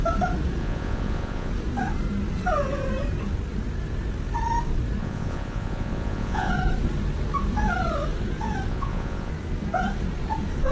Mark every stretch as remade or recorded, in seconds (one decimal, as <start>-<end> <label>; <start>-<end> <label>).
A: 0.0-0.6 recorded; 0.6-1.5 remade; 1.5-5.0 recorded; 5.0-6.5 remade; 6.5-8.7 recorded; 8.7-9.3 remade; 9.3-10.7 recorded